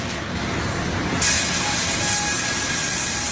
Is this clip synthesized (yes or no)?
no